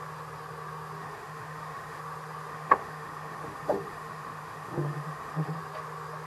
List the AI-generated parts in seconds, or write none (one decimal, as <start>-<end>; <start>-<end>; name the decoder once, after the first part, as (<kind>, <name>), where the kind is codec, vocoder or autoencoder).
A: 1.0-2.0 (autoencoder, DAC-VAE); 2.5-5.6